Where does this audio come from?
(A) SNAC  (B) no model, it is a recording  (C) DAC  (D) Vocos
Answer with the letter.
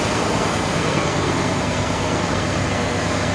A